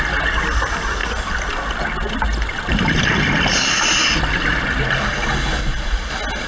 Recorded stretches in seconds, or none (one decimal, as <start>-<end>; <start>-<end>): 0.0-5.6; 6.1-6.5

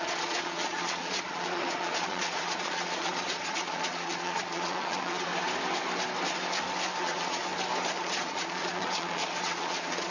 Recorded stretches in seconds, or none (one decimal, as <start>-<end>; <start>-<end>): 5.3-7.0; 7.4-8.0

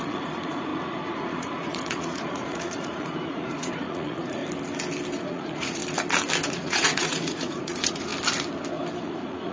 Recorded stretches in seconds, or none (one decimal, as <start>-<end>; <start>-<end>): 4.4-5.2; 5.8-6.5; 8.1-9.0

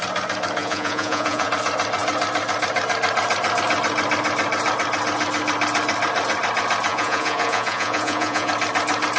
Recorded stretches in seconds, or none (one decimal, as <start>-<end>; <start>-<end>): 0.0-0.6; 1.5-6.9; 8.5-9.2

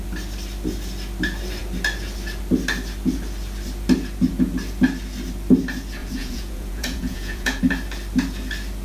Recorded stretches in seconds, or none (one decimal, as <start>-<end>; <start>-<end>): 0.0-6.0; 7.6-8.8

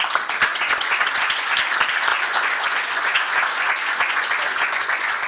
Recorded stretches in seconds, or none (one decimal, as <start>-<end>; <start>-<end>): 0.0-0.5; 1.5-2.1